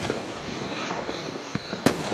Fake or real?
fake